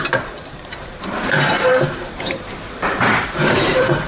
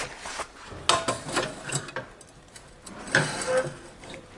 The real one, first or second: second